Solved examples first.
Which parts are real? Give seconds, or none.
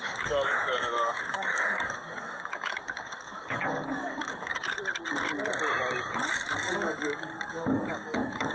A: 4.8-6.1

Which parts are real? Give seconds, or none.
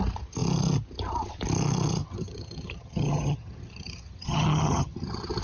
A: 0.0-2.0